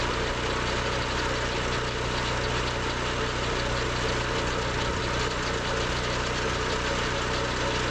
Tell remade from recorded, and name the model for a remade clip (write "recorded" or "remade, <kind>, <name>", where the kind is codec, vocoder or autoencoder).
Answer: recorded